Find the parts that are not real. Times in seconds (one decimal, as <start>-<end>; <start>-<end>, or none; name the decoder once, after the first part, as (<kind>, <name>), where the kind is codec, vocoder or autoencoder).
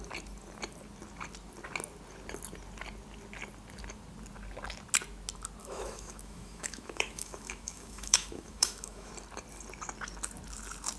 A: 5.6-9.1 (autoencoder, DAC-VAE)